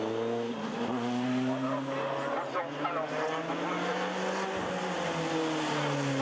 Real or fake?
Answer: real